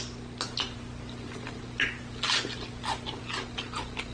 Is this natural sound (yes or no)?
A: yes